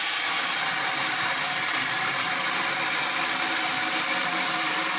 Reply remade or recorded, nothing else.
recorded